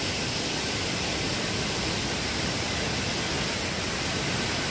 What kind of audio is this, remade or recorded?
recorded